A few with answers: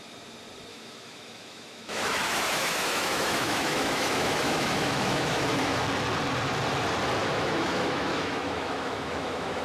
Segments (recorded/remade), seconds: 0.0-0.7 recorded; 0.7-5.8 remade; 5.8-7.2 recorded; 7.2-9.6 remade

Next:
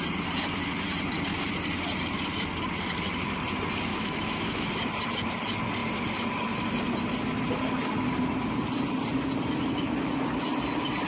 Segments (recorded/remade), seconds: 0.0-3.9 recorded; 3.9-4.7 remade; 4.7-11.1 recorded

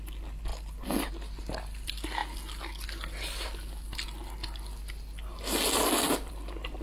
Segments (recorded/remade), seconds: 0.0-6.8 recorded

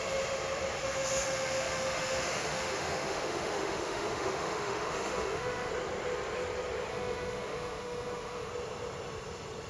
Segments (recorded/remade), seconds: 0.0-0.8 recorded; 0.8-5.7 remade; 5.7-6.9 recorded; 6.9-8.5 remade; 8.5-9.7 recorded

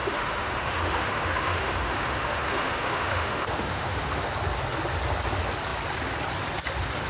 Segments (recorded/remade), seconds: 0.0-4.3 remade; 4.3-7.1 recorded

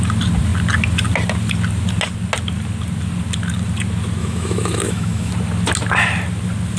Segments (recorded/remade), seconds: 0.0-4.2 recorded; 4.2-5.3 remade; 5.3-6.8 recorded

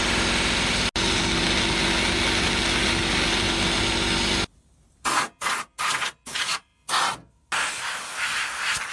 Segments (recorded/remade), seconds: 0.0-8.9 recorded

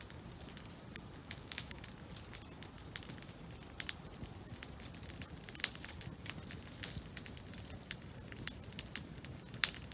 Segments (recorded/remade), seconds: 0.0-1.2 recorded; 1.2-1.8 remade; 1.8-9.9 recorded